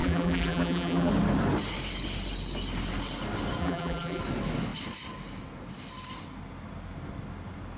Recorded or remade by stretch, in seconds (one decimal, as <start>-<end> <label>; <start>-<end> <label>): 0.0-1.1 remade; 1.1-3.6 recorded; 3.6-4.2 remade; 4.2-7.8 recorded